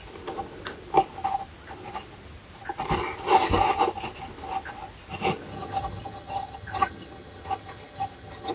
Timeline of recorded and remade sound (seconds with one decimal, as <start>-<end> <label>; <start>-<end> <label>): 0.0-5.5 recorded; 5.5-8.5 remade